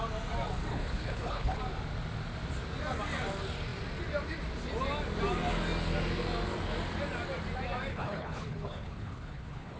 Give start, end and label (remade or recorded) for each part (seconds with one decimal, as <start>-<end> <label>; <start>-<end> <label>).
0.0-0.7 recorded; 0.7-1.6 remade; 1.6-7.9 recorded; 7.9-9.8 remade